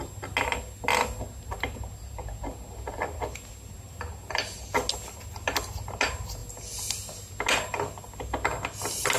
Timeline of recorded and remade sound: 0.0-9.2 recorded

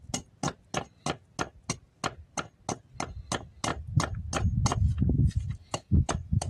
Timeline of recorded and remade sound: 0.0-5.6 recorded; 5.6-6.5 remade

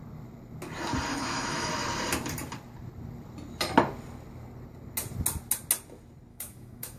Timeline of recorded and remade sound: 0.0-1.1 recorded; 1.1-1.7 remade; 1.7-6.3 recorded; 6.3-7.0 remade